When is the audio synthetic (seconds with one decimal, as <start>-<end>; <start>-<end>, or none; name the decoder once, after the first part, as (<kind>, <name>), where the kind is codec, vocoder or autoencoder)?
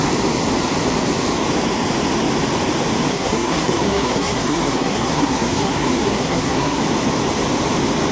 3.1-6.8 (codec, SNAC)